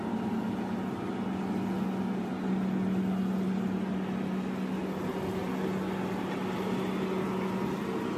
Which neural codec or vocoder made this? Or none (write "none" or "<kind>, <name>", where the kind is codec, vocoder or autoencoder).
none